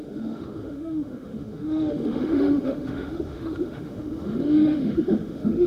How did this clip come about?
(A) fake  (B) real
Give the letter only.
A